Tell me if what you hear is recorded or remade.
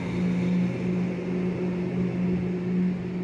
recorded